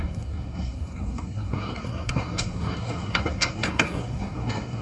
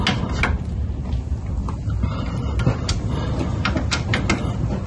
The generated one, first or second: first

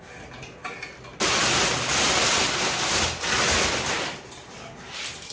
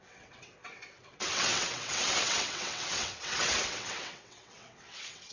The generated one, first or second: second